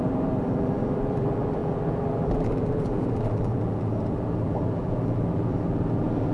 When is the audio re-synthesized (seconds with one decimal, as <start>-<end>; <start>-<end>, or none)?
0.0-6.3